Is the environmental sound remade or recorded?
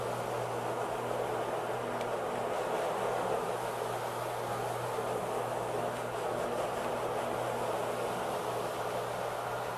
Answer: recorded